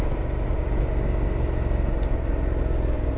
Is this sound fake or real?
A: real